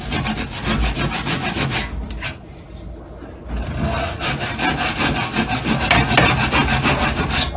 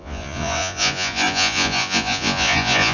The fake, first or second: second